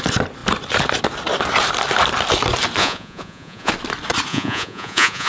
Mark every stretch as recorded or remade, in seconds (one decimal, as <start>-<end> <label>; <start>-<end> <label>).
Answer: 0.0-2.8 recorded; 2.8-3.7 remade; 3.7-4.3 recorded; 4.3-5.3 remade